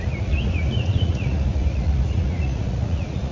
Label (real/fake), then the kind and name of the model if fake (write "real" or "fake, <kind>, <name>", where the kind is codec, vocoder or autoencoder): fake, vocoder, Vocos